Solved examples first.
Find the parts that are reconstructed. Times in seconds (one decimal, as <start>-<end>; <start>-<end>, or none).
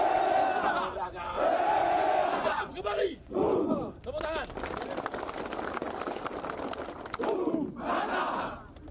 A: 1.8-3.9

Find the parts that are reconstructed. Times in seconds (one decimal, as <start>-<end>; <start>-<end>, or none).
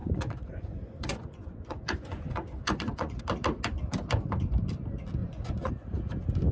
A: 0.0-3.2; 5.2-5.7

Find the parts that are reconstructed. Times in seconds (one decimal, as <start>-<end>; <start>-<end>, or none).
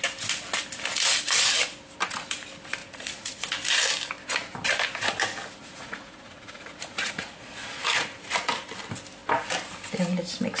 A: 2.8-3.5; 5.6-8.3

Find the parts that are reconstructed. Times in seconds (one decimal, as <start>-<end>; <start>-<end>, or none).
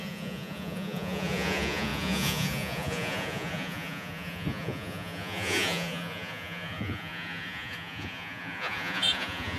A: 0.0-9.6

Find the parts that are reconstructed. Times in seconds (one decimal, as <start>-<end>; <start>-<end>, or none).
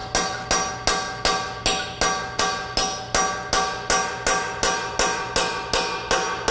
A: none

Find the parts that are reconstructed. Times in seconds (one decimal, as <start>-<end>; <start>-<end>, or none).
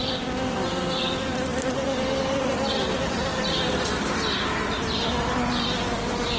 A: none